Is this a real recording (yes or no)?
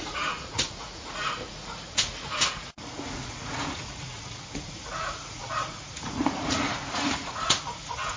no